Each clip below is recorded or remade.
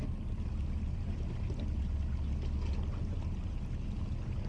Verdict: recorded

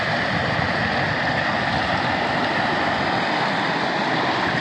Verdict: recorded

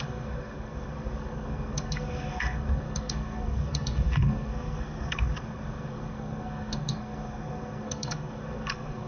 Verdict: remade